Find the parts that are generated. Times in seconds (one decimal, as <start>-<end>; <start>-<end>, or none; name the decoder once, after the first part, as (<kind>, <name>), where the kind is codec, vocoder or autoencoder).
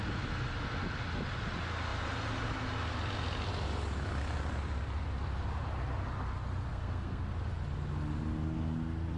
6.7-7.2 (codec, SNAC)